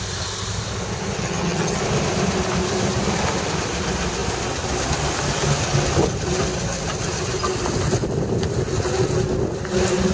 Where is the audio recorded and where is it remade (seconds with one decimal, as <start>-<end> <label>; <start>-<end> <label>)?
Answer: 0.0-1.2 recorded; 1.2-1.8 remade; 1.8-10.1 recorded